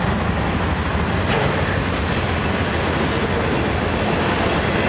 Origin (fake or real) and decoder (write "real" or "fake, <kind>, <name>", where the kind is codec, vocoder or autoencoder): real